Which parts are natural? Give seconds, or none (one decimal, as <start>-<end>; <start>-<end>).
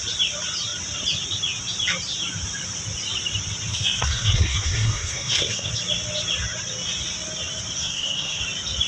0.0-3.7; 5.7-7.8; 8.4-8.9